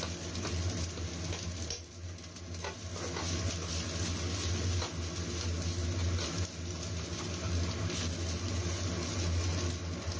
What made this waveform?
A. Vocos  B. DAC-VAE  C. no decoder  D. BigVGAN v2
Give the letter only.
C